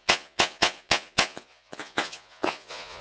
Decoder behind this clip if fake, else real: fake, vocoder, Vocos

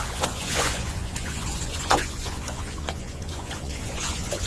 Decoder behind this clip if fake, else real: fake, vocoder, Vocos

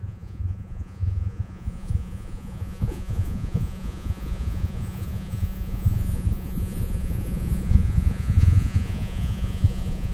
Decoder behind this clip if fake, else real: fake, vocoder, Vocos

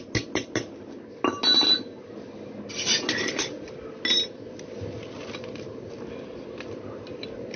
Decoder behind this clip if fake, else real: real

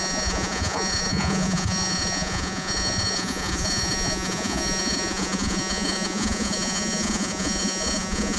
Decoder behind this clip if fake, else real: fake, vocoder, Vocos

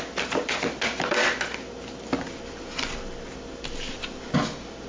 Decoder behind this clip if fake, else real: real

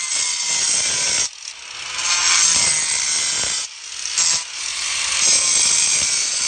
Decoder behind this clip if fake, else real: real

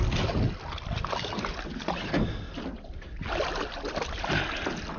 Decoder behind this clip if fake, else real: real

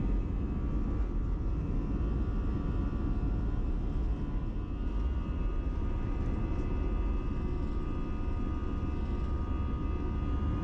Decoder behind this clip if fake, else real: real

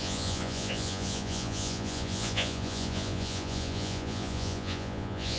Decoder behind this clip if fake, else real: fake, vocoder, Vocos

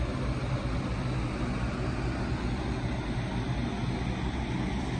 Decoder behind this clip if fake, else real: real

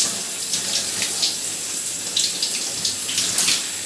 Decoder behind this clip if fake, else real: real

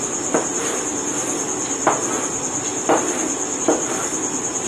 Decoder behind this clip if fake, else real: real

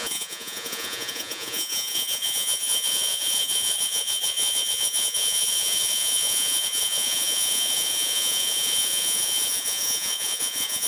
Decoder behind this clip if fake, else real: fake, vocoder, Vocos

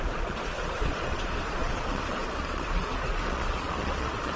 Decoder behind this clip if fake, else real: fake, vocoder, Vocos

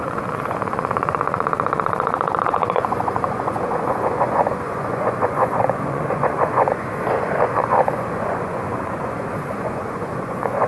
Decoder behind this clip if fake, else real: fake, vocoder, Vocos